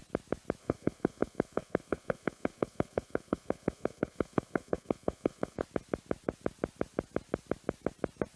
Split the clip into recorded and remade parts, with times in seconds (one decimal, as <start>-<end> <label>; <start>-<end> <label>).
0.0-0.6 recorded; 0.6-5.6 remade; 5.6-8.4 recorded